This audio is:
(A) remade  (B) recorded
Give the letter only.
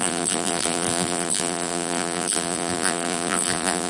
A